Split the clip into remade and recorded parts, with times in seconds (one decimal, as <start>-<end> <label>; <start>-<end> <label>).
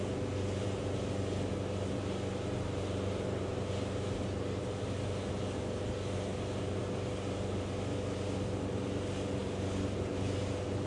0.0-10.9 recorded